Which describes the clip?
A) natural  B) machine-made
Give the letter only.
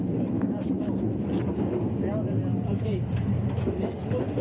A